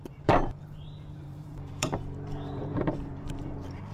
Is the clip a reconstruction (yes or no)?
yes